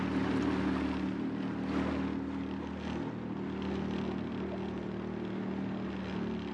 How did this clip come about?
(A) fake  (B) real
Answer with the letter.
B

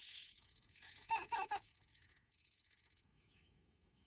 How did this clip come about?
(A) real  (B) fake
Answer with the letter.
B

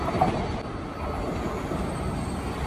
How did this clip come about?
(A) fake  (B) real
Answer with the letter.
B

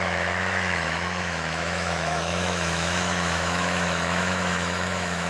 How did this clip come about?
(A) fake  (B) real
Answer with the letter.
A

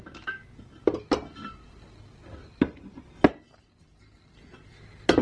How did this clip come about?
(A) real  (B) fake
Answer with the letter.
A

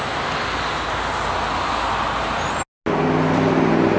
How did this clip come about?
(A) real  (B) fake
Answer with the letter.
A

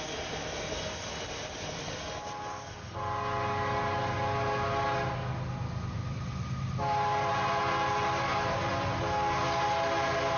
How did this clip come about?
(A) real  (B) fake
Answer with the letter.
A